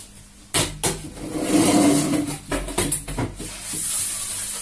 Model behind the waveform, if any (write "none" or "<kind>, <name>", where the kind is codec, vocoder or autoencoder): none